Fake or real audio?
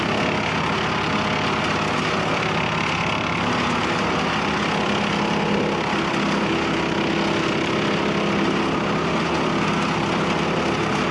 real